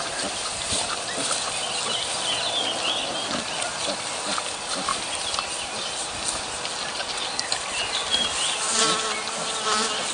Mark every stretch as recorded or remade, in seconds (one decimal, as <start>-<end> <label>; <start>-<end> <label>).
0.0-4.9 recorded; 4.9-5.9 remade; 5.9-10.1 recorded